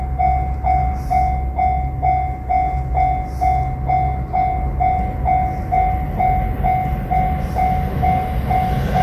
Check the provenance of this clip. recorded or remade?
recorded